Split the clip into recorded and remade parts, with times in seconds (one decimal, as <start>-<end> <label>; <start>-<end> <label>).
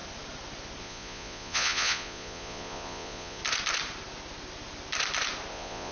0.0-0.8 recorded; 0.8-3.4 remade; 3.4-5.5 recorded; 5.5-5.9 remade